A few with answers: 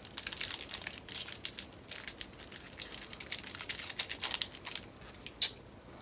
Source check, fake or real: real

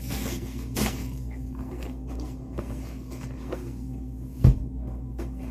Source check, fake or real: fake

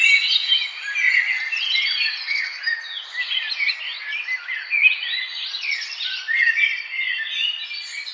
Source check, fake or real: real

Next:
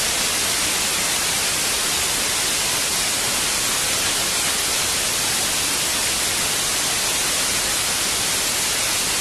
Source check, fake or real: real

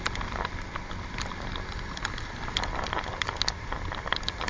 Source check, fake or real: real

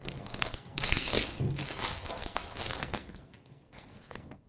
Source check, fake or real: fake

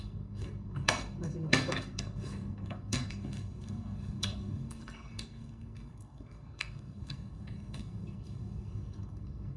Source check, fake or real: fake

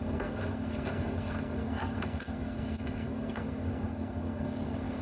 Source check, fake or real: fake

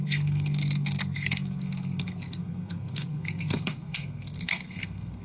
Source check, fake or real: fake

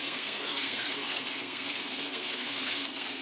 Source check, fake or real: fake